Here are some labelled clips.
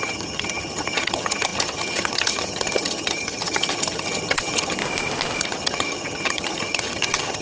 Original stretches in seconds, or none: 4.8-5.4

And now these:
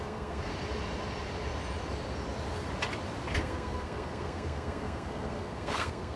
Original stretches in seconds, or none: 0.5-3.4

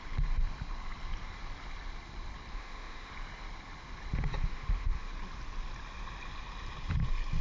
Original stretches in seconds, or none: 0.0-2.5; 3.1-4.5; 5.1-7.4

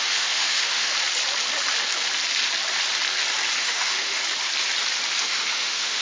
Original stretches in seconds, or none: 0.9-3.6; 4.2-5.2